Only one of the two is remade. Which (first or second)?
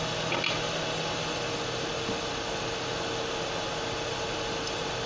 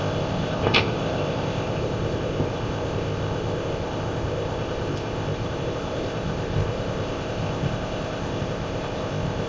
second